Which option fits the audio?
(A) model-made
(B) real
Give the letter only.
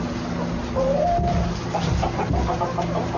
B